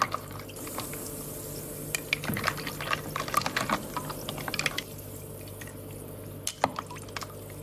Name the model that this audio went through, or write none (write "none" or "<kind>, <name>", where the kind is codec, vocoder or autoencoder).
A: none